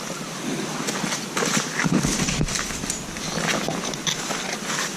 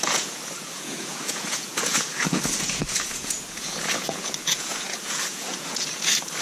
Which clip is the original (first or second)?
first